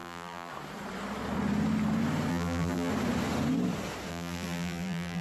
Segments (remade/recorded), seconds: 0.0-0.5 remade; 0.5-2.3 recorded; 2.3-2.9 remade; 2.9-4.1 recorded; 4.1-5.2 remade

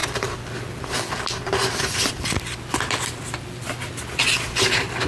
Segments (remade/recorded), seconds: 0.0-3.1 remade; 3.1-5.1 recorded

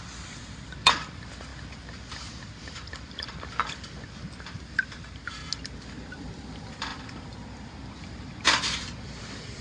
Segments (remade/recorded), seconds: 0.0-5.4 remade; 5.4-6.1 recorded; 6.1-9.6 remade

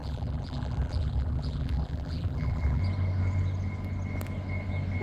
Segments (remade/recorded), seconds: 0.0-2.8 remade; 2.8-5.0 recorded

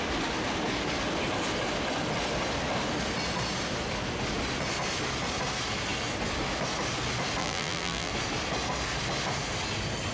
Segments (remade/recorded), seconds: 0.0-7.4 recorded; 7.4-8.1 remade; 8.1-10.1 recorded

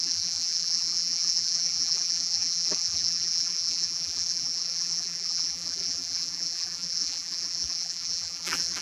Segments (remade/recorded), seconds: 0.0-8.8 remade